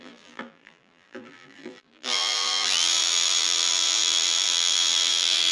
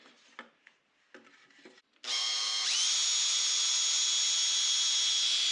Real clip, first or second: second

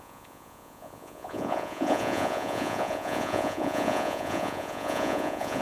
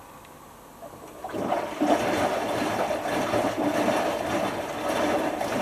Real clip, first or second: second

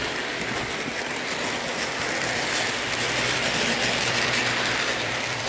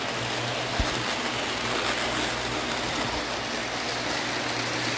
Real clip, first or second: second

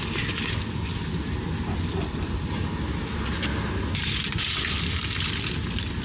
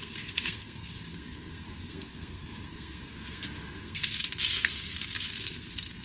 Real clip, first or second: first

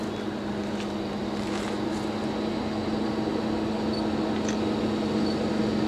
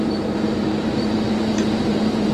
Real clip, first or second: first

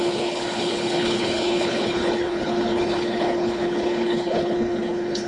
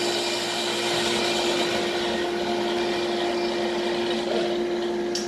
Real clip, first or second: second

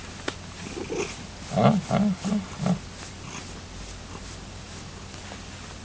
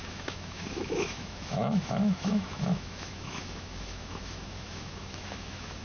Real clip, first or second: first